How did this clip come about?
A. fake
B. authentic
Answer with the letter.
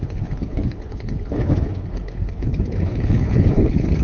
A